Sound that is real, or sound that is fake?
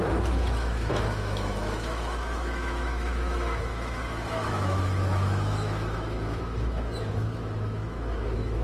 fake